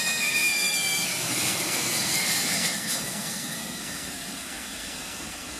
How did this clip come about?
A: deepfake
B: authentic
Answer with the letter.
A